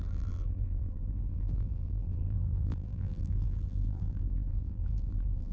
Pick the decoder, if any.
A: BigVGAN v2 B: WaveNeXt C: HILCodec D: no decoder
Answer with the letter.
A